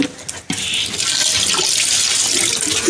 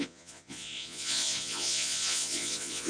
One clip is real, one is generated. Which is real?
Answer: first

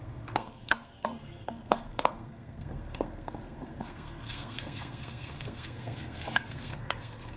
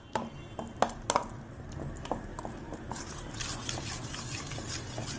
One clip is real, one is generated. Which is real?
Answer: second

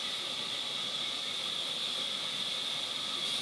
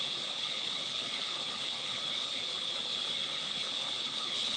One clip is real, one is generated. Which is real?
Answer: first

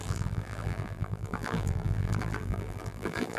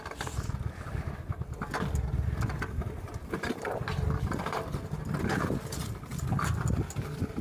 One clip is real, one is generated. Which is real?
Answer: second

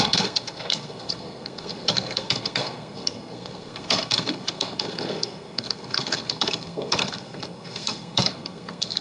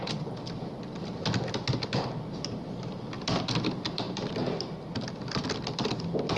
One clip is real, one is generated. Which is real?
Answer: second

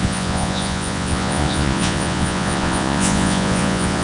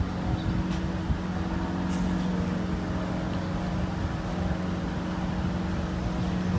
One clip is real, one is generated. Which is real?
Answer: second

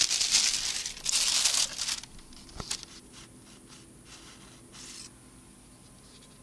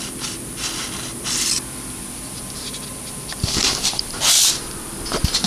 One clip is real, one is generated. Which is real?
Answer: first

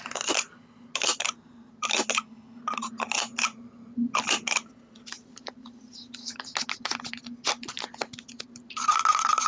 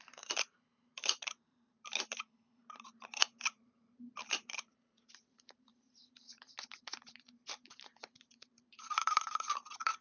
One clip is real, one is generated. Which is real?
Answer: first